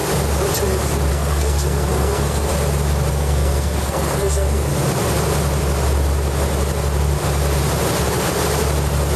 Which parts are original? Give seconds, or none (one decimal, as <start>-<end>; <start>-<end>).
0.0-1.1; 2.5-3.1; 4.7-9.2